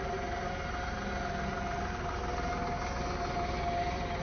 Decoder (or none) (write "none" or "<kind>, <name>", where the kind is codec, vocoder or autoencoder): none